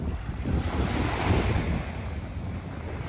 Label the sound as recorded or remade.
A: recorded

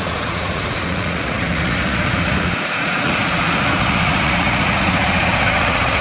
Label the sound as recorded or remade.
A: remade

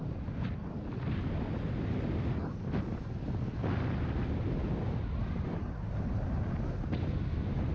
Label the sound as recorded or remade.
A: recorded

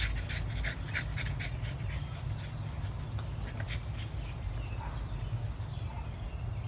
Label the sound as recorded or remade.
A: recorded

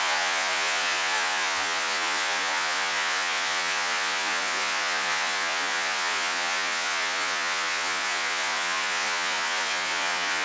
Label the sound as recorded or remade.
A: remade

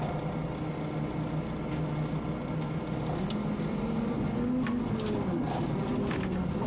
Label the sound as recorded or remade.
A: recorded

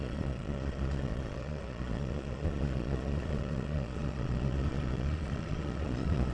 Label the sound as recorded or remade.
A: remade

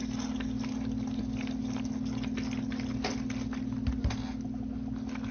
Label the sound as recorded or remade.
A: recorded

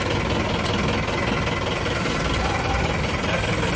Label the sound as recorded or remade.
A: recorded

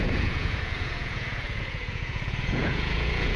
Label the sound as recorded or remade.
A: remade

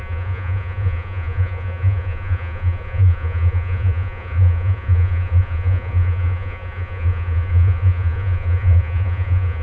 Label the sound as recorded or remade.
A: remade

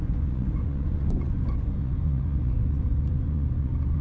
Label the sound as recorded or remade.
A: remade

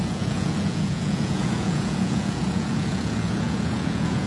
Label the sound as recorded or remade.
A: remade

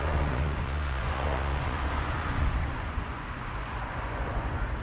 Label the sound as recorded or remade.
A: remade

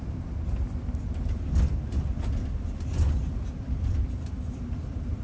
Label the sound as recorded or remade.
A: recorded